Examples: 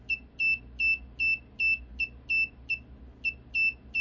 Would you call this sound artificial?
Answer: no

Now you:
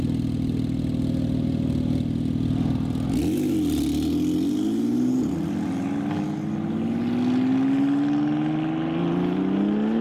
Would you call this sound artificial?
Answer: no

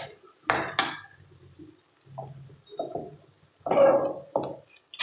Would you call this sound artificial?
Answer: no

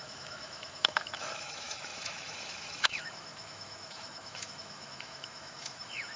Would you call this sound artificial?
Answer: yes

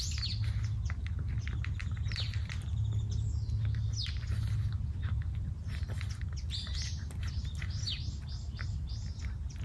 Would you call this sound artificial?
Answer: no